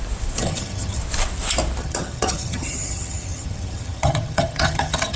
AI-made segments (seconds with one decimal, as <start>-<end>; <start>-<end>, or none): 0.4-1.0; 1.8-5.2